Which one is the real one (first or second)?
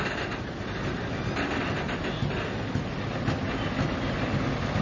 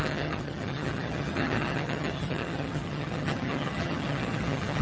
first